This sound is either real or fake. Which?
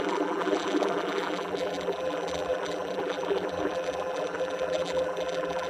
fake